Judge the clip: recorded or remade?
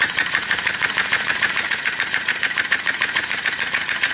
remade